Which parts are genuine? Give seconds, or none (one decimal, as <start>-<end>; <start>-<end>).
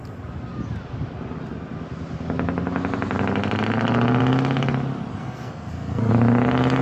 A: 0.0-5.1; 6.1-6.8